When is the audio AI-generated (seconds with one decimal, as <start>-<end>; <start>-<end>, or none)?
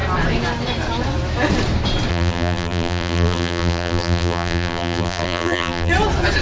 2.1-5.9